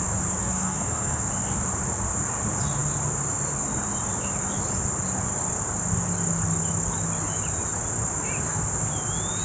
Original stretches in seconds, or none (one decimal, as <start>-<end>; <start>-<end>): 0.0-0.4; 1.2-9.4